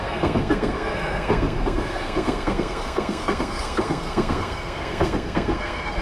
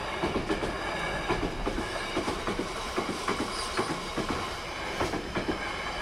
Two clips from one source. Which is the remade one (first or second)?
first